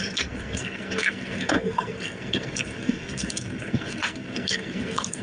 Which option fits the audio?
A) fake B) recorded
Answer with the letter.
A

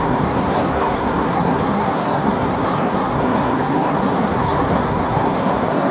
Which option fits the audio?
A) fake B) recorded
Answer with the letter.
A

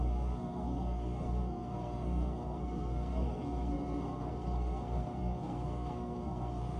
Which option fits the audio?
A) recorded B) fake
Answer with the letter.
B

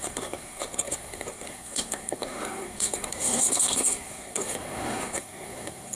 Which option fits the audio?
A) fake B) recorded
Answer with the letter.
A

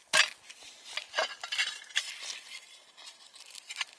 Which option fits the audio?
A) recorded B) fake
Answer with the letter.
A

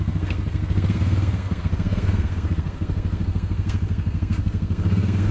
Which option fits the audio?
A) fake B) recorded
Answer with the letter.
A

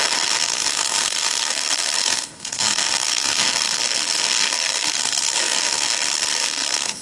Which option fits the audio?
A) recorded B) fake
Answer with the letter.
B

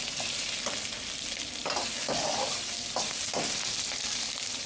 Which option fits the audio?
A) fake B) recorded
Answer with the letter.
B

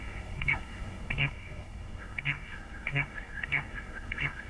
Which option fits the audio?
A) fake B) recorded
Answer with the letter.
A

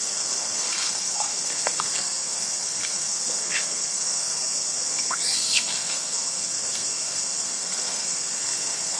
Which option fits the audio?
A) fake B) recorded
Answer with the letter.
A